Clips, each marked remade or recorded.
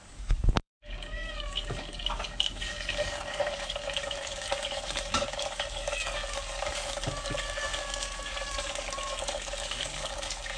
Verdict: remade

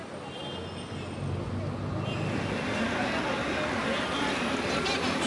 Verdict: recorded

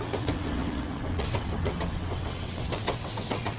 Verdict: remade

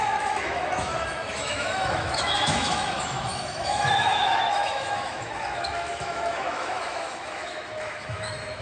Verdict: remade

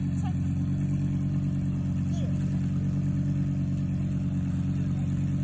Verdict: recorded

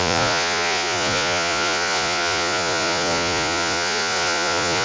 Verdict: remade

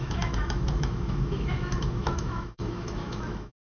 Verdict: remade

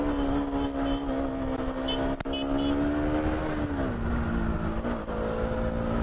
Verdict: recorded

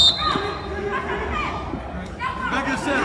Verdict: recorded